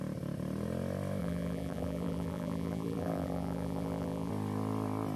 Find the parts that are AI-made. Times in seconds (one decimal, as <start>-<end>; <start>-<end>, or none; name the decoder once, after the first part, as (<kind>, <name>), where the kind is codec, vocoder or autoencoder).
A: 1.2-4.3 (vocoder, BigVGAN v2)